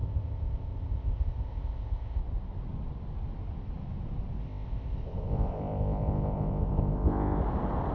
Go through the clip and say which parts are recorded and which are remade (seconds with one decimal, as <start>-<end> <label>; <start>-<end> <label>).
0.0-2.2 remade; 2.2-4.4 recorded; 4.4-7.4 remade; 7.4-7.9 recorded